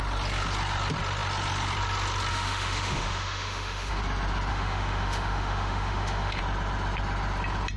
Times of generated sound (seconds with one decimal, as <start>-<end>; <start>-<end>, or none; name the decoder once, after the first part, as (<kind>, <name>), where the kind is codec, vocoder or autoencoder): 2.3-4.0 (autoencoder, DAC-VAE); 4.5-6.4